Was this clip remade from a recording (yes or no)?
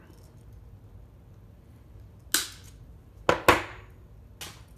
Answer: no